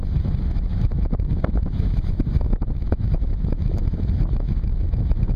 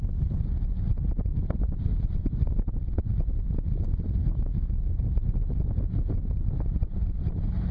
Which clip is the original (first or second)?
second